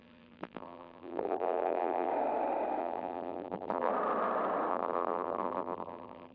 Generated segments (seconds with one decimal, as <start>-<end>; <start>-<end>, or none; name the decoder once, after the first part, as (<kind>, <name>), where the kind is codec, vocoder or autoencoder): 0.0-2.1 (vocoder, BigVGAN v2); 2.8-3.9; 4.7-6.3